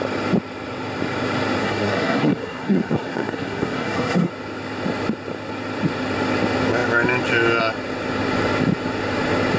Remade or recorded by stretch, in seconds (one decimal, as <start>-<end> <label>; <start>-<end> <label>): 0.0-1.6 recorded; 1.6-4.3 remade; 4.3-9.6 recorded